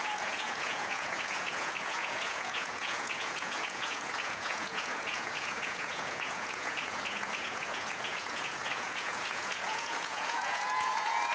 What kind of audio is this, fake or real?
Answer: fake